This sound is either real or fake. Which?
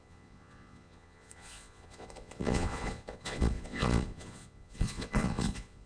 fake